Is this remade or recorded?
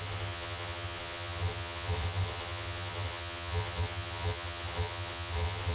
remade